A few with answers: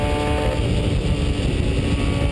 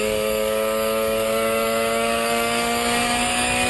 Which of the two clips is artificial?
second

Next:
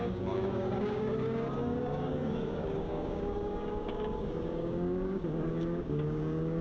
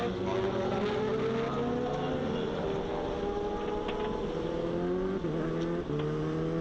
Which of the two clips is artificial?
first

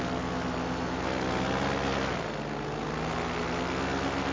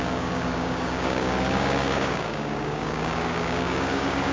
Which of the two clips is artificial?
second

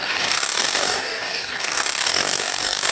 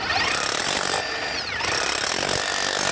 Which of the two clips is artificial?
first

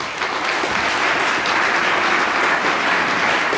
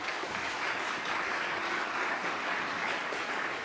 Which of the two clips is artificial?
second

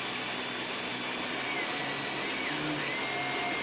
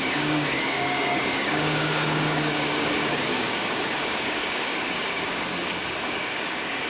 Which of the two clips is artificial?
second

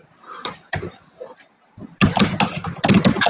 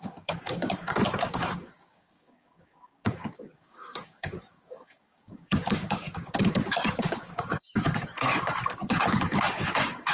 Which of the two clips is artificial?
second